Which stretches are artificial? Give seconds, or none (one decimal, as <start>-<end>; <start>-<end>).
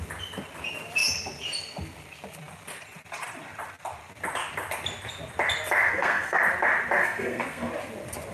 5.9-6.4; 7.0-7.7